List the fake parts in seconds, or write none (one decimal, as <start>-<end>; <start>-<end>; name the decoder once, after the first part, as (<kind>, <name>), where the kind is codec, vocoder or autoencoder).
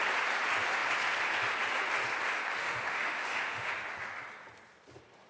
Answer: 2.6-3.7 (autoencoder, DAC-VAE)